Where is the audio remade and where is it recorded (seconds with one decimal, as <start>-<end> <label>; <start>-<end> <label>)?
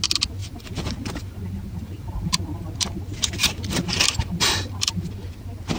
0.0-0.4 recorded; 0.4-3.0 remade; 3.0-3.4 recorded; 3.4-5.1 remade; 5.1-5.8 recorded